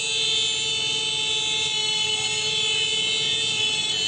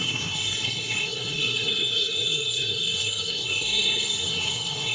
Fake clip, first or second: second